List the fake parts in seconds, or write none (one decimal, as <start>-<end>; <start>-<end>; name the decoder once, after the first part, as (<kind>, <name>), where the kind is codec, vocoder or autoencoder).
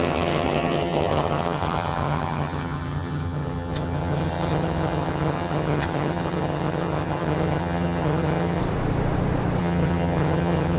0.0-8.6 (vocoder, HiFi-GAN); 9.6-10.8